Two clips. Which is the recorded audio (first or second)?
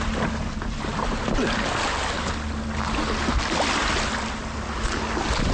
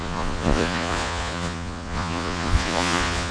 first